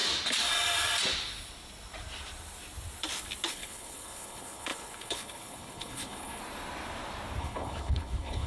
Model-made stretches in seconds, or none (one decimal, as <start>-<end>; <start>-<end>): 3.5-6.4; 7.4-8.5